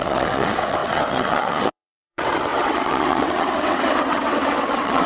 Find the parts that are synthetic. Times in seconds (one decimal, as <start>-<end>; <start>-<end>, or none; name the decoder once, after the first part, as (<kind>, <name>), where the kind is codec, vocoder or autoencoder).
0.0-5.1 (vocoder, WaveNeXt)